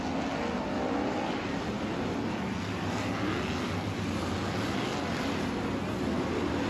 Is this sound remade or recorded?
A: recorded